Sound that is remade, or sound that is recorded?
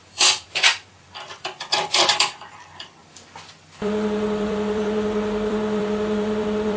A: remade